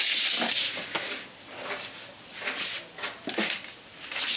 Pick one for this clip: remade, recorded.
recorded